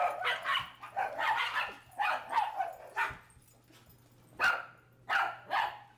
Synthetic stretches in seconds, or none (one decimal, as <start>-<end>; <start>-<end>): none